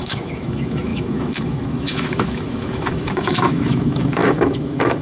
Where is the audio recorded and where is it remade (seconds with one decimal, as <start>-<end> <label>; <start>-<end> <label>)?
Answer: 0.0-5.0 remade